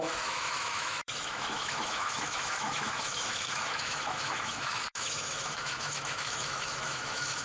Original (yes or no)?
no